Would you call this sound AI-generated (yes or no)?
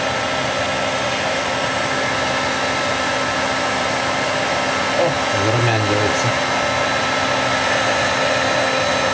no